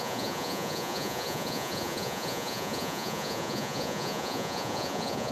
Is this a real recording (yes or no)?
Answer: no